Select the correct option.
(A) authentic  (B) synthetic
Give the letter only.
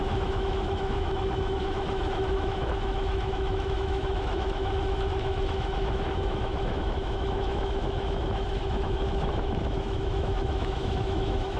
B